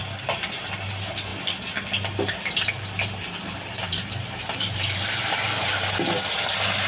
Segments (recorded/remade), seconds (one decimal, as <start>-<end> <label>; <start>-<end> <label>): 0.0-3.8 recorded; 3.8-6.9 remade